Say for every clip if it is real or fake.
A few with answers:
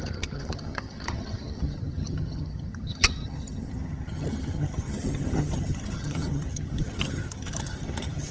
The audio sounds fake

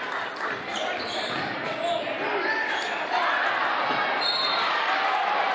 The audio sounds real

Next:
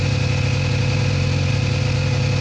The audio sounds real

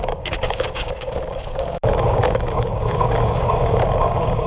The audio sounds fake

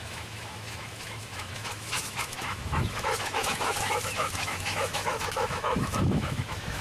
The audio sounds fake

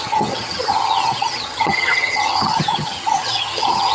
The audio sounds fake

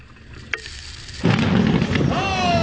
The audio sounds real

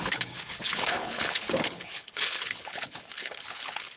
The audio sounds fake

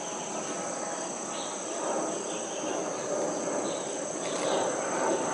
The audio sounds real